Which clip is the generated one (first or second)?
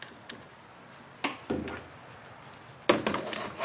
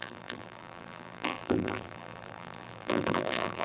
second